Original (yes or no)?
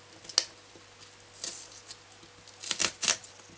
yes